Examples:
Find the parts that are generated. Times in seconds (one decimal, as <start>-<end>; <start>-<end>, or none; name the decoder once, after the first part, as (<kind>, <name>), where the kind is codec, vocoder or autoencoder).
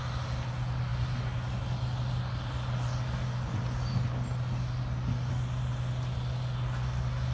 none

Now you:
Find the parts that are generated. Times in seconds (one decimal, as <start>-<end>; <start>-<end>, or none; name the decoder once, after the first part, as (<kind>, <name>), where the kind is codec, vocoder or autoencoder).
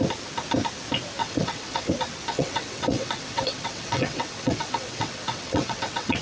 1.2-1.9 (vocoder, WaveNeXt); 2.3-6.2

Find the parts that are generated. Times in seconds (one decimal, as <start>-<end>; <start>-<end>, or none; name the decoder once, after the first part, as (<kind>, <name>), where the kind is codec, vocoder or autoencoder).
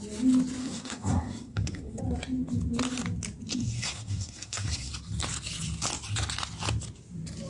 0.6-2.0 (codec, SNAC); 3.5-4.9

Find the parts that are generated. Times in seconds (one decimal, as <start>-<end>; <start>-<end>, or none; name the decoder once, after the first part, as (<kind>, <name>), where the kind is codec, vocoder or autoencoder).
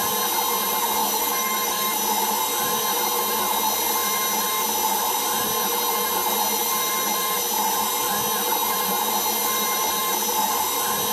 1.0-2.0 (autoencoder, DAC-VAE)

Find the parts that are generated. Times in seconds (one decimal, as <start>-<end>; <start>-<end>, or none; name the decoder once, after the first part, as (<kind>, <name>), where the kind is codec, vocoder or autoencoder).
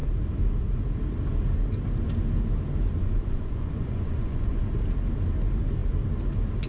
3.0-4.6 (vocoder, Vocos)